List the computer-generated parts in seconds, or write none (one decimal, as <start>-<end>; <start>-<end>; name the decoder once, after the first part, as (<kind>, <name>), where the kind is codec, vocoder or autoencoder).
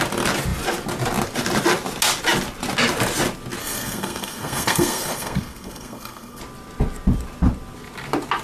3.6-6.4 (codec, SNAC)